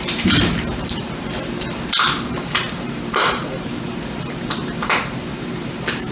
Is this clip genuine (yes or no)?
no